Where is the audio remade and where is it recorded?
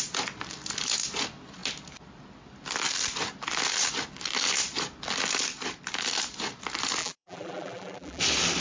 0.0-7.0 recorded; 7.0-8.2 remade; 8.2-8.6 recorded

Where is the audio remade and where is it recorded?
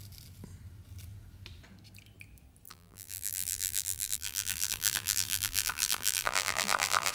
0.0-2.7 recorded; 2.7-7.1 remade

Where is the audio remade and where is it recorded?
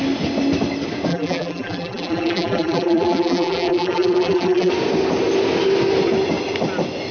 0.0-1.1 recorded; 1.1-4.7 remade; 4.7-7.1 recorded